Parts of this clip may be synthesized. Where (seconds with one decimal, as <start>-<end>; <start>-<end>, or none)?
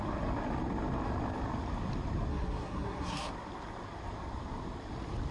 2.3-3.3